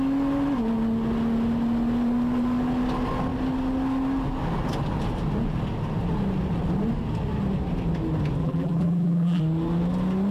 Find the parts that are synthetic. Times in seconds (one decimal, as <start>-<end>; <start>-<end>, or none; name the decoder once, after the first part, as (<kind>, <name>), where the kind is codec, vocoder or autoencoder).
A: 8.4-9.4 (vocoder, BigVGAN v2)